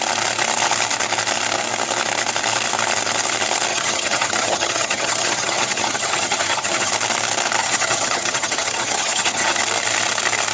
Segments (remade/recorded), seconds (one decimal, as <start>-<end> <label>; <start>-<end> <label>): 0.0-3.7 recorded; 3.7-6.9 remade; 6.9-7.6 recorded; 7.6-9.6 remade; 9.6-10.5 recorded